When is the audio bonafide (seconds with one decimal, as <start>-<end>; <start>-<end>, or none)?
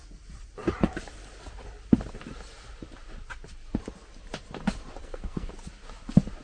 0.0-5.0; 5.5-6.4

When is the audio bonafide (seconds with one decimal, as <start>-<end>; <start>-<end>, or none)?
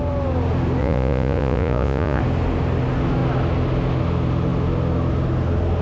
0.0-0.8; 2.2-5.8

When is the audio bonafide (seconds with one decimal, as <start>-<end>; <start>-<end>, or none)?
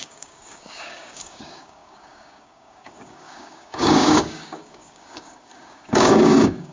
none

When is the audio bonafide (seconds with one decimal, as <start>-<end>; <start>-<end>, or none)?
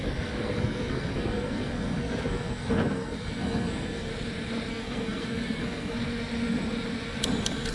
4.1-4.7; 6.0-7.7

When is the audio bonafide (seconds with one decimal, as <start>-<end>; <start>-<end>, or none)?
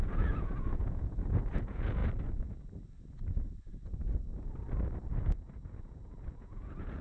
2.0-5.1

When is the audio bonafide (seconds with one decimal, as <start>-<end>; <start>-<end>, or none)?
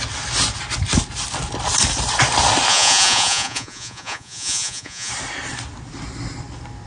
0.0-2.7; 5.1-6.9